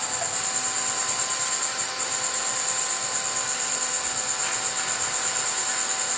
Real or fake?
real